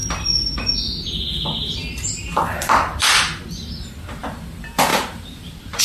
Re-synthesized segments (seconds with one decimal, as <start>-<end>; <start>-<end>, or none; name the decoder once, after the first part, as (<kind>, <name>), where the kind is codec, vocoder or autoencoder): 4.9-5.8 (vocoder, BigVGAN v2)